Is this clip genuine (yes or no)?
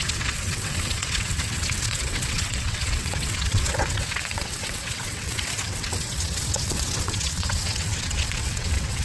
no